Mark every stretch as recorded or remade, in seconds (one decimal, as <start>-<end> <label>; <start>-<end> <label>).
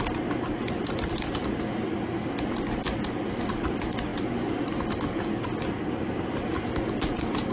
0.0-7.5 recorded